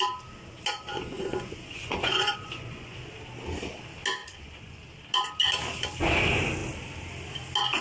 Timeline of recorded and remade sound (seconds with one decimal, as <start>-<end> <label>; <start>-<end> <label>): 0.0-0.9 recorded; 0.9-3.1 remade; 3.1-4.2 recorded; 4.2-4.8 remade; 4.8-7.8 recorded